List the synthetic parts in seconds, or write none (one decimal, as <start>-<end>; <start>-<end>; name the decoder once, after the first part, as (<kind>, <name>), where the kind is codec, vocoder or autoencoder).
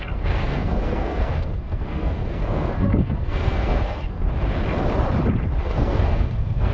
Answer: 0.0-4.2 (codec, SNAC); 5.6-6.7